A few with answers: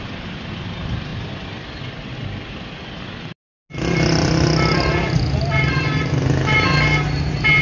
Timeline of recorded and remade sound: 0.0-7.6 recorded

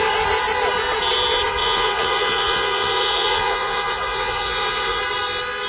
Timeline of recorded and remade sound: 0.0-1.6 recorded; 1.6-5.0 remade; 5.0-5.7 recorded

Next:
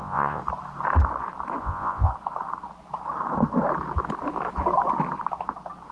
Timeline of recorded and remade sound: 0.0-0.4 remade; 0.4-1.6 recorded; 1.6-2.1 remade; 2.1-5.9 recorded

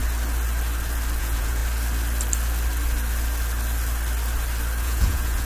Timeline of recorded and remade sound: 0.0-1.2 recorded; 1.2-1.6 remade; 1.6-4.8 recorded; 4.8-5.4 remade

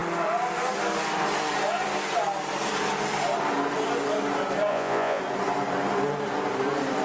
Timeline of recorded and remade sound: 0.0-4.7 recorded; 4.7-5.2 remade; 5.2-7.0 recorded